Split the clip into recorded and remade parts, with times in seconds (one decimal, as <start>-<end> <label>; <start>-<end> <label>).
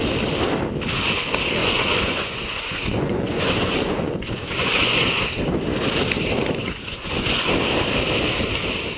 0.0-1.6 recorded; 1.6-5.2 remade; 5.2-6.6 recorded; 6.6-7.5 remade; 7.5-9.0 recorded